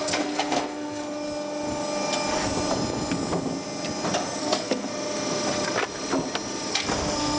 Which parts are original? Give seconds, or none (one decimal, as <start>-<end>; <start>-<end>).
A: 1.0-4.4; 4.9-6.7